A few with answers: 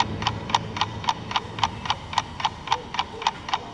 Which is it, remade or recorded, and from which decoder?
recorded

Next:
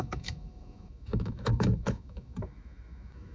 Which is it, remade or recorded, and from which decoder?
remade, autoencoder, DAC-VAE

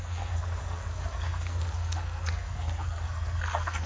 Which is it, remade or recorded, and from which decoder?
remade, codec, SNAC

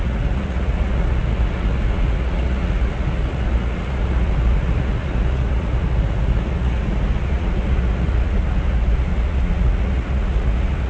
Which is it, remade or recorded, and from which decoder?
remade, vocoder, Vocos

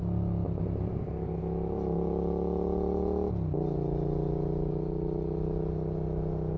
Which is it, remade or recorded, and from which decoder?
recorded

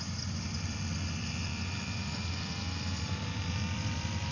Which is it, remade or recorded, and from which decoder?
remade, vocoder, BigVGAN v2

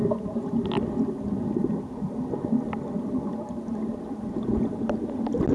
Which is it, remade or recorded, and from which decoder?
recorded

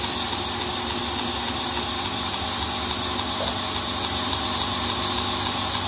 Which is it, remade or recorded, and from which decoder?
recorded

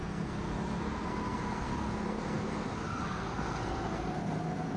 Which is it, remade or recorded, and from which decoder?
remade, codec, SNAC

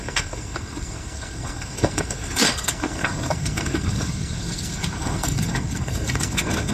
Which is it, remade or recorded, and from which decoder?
remade, codec, SNAC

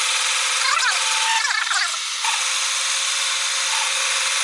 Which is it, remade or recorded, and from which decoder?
recorded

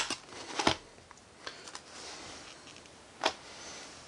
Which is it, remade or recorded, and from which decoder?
recorded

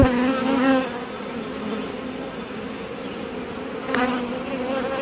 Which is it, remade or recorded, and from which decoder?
recorded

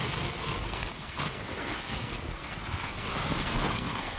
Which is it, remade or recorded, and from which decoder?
remade, codec, SNAC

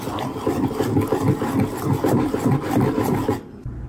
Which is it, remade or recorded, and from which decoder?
recorded